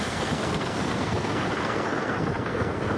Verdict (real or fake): fake